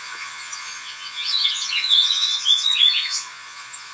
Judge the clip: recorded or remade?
remade